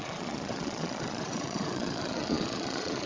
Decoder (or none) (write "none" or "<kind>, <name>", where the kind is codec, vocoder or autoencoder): vocoder, Vocos